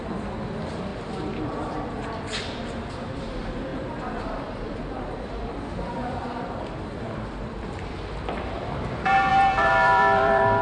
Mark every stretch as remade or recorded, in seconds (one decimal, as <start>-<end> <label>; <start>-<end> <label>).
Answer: 0.0-10.6 remade